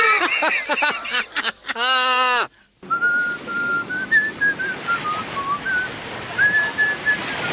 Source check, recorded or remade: recorded